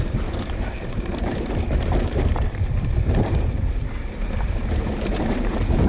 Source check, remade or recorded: remade